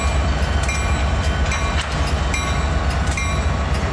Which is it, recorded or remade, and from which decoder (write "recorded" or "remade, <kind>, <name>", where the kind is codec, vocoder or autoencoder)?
recorded